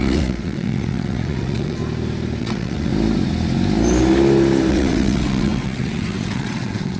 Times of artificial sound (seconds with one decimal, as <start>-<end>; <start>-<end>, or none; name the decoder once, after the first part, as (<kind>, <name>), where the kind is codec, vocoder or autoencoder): 0.0-1.8 (vocoder, WaveNeXt); 2.4-2.9; 4.7-7.0